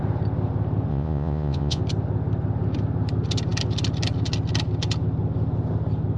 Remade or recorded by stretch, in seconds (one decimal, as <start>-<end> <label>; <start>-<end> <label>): 0.0-0.9 recorded; 0.9-1.8 remade; 1.8-6.2 recorded